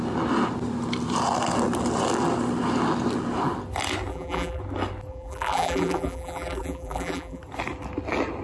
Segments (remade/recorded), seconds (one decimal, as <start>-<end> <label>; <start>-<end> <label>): 0.0-4.1 recorded; 4.1-4.6 remade; 4.6-5.1 recorded; 5.1-7.4 remade; 7.4-8.4 recorded